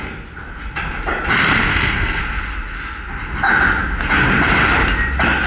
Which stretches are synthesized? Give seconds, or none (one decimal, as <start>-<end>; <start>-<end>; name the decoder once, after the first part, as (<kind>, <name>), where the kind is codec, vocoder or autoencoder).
1.7-2.2 (codec, SNAC)